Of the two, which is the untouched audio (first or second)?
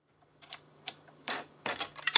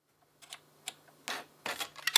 second